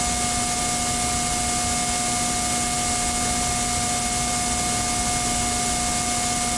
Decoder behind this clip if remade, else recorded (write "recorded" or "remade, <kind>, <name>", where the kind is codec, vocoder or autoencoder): recorded